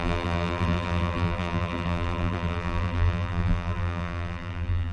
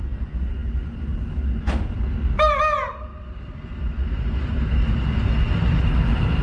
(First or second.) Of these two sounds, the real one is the second